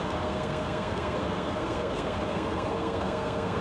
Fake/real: fake